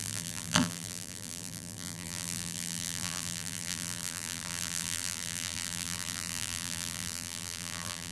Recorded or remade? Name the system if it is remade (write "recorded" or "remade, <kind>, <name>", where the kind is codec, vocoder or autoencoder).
remade, vocoder, BigVGAN v2